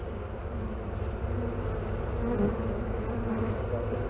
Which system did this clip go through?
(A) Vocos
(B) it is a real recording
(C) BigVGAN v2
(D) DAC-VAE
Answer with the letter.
B